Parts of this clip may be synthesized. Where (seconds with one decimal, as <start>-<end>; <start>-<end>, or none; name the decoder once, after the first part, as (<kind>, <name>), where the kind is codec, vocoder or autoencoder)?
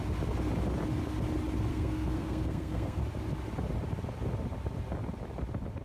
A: 1.7-3.0 (codec, SNAC)